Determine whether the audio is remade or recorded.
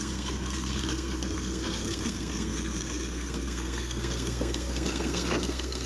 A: remade